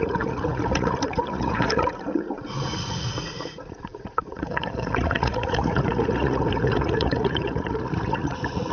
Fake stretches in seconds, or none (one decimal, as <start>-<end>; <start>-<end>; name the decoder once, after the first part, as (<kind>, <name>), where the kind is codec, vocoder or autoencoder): 0.0-8.7 (vocoder, Vocos)